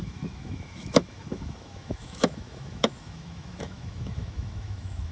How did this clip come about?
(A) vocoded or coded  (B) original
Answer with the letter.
A